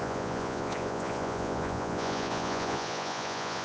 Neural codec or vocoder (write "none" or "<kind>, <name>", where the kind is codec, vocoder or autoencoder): vocoder, Vocos